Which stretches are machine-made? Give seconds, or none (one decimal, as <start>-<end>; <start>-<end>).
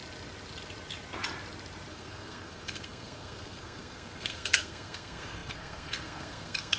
1.9-6.8